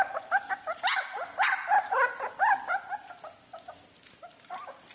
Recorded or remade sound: recorded